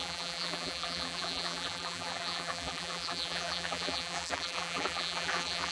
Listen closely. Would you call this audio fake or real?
fake